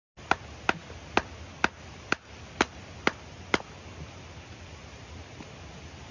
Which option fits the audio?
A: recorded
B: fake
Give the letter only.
A